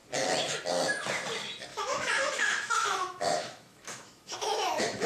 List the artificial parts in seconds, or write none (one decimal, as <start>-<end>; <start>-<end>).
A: 1.7-5.1